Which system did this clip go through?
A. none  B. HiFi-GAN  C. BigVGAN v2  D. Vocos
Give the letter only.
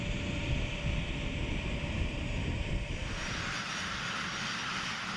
A